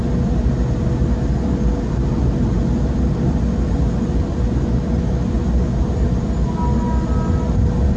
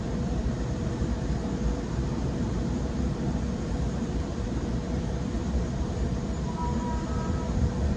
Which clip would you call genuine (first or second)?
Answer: first